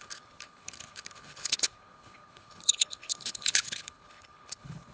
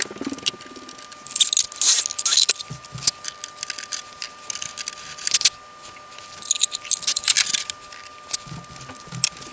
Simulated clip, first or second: first